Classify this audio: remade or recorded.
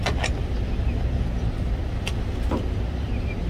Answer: recorded